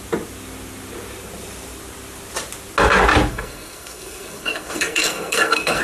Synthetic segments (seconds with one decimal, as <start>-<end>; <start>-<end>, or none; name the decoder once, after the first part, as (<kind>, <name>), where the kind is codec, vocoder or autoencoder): 3.3-5.8 (codec, SNAC)